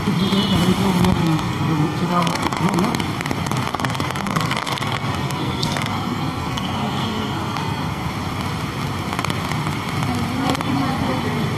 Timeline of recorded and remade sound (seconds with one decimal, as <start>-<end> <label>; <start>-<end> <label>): 0.0-1.2 recorded; 1.2-2.6 remade; 2.6-3.7 recorded; 3.7-8.1 remade; 8.1-11.6 recorded